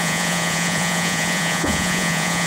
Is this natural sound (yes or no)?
no